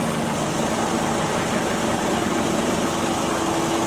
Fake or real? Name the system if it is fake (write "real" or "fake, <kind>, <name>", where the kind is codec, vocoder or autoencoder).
real